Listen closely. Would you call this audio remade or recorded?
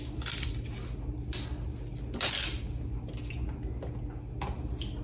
recorded